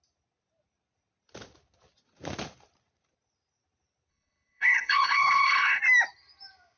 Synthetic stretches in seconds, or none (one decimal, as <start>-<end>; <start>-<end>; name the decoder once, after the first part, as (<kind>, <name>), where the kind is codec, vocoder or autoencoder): 4.1-5.8 (codec, HILCodec)